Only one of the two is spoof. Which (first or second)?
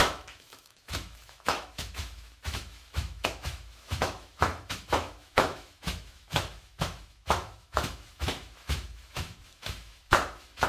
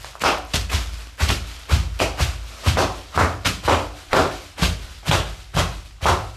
first